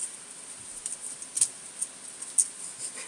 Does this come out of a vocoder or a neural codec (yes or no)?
no